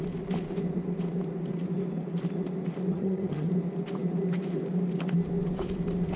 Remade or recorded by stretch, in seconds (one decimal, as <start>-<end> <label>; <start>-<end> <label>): 0.0-2.9 recorded; 2.9-3.5 remade; 3.5-6.2 recorded